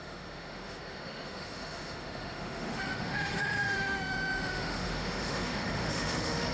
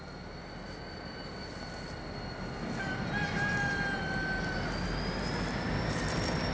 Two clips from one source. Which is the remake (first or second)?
first